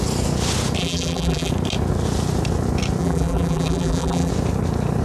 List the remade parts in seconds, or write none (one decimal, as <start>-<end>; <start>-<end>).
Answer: 0.8-1.5; 3.0-4.3